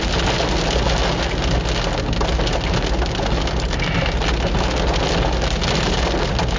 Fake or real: real